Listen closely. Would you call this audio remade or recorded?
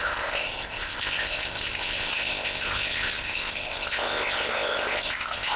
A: remade